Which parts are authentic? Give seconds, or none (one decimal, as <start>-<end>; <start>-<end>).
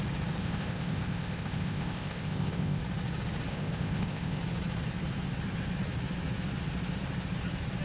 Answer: 0.0-0.4; 2.8-3.5; 4.4-7.8